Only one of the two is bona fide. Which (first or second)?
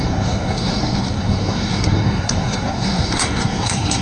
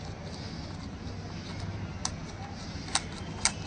second